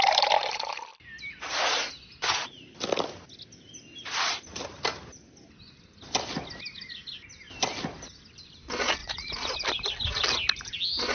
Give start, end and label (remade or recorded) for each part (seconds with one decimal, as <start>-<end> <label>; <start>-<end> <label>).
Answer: 0.0-9.0 recorded; 9.0-9.5 remade; 9.5-11.1 recorded